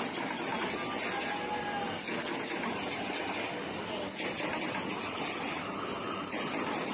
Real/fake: real